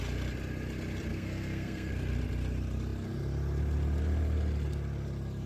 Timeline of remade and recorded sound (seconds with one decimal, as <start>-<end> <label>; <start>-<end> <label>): 0.0-1.1 recorded; 1.1-1.9 remade; 1.9-5.5 recorded